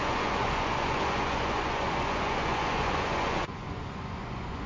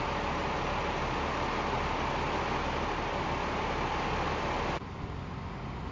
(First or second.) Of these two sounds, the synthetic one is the first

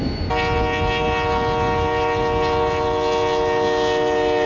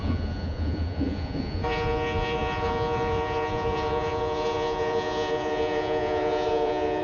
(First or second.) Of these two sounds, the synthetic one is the second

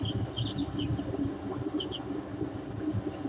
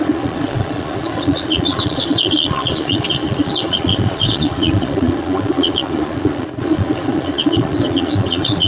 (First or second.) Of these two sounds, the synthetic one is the second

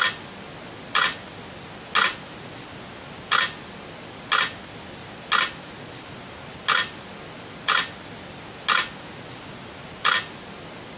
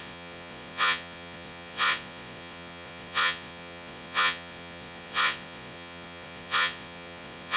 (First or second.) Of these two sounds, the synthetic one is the second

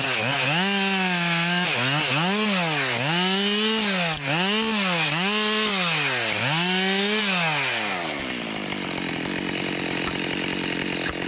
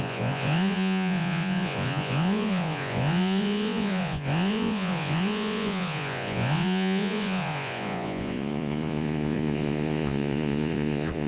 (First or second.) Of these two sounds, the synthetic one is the second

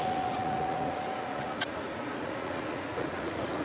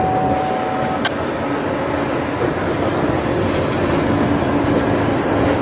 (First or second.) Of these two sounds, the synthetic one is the first